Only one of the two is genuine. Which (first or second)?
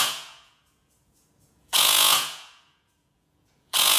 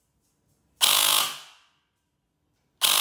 second